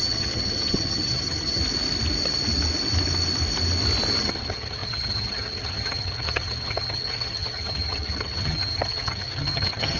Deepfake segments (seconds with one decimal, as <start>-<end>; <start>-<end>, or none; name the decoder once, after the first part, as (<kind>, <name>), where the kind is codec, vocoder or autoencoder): 0.0-1.6 (vocoder, HiFi-GAN); 4.2-10.0